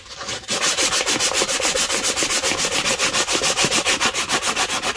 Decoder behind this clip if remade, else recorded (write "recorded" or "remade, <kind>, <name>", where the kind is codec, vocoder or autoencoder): recorded